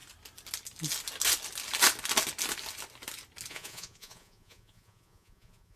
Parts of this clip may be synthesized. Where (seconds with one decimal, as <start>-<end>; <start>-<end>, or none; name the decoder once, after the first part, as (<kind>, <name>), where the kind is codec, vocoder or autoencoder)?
3.5-5.8 (vocoder, Vocos)